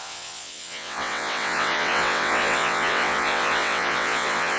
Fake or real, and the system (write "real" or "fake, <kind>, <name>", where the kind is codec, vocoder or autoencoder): fake, vocoder, WaveNeXt